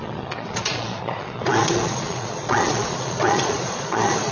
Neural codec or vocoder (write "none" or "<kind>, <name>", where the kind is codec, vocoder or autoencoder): vocoder, Vocos